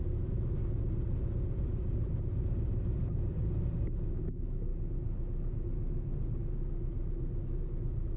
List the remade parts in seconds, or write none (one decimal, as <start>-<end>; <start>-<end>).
0.0-0.6; 4.2-4.7